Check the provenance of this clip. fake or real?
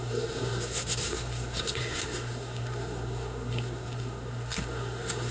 fake